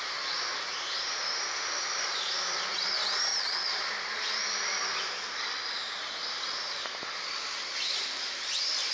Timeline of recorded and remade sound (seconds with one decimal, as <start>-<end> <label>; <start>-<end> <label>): 0.0-3.3 recorded; 3.3-3.9 remade; 3.9-8.9 recorded